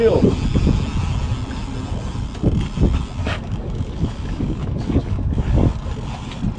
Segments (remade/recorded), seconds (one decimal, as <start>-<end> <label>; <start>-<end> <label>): 0.0-3.2 recorded; 3.2-5.9 remade; 5.9-6.6 recorded